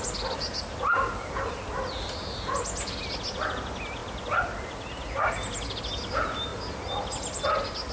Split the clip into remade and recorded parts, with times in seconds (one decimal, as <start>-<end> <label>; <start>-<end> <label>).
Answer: 0.0-1.1 recorded; 1.1-1.9 remade; 1.9-7.9 recorded